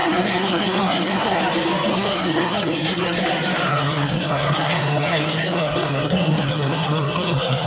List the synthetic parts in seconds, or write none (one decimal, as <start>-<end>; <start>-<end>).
0.0-1.4; 1.9-3.2; 3.7-7.7